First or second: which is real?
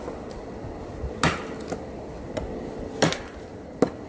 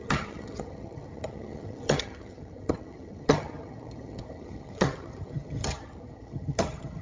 first